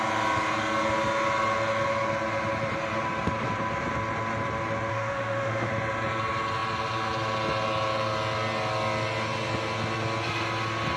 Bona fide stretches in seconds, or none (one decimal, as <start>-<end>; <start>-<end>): 0.0-4.9; 5.7-11.0